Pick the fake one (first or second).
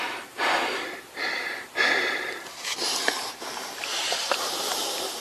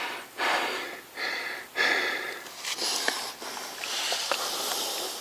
first